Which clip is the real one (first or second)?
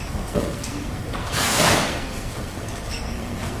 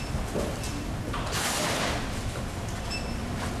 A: second